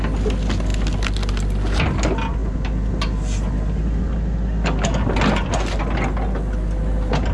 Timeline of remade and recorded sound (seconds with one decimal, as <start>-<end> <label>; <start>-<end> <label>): 0.0-7.3 recorded